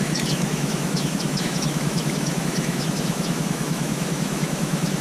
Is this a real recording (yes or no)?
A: no